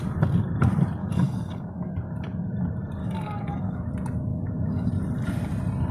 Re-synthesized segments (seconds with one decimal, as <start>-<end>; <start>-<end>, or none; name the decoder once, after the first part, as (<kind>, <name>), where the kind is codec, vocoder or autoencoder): 1.0-1.9 (codec, DAC); 3.0-3.9; 4.3-4.9